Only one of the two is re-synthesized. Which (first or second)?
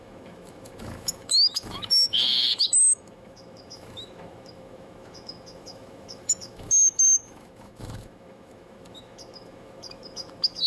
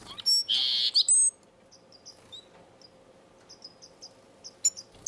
first